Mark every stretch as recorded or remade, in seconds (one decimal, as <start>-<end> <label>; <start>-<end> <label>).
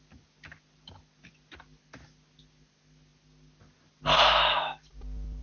0.0-5.4 recorded